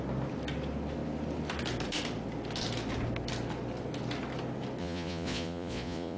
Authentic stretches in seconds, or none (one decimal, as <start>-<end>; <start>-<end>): 0.0-4.8